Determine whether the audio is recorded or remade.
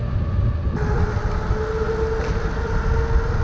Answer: recorded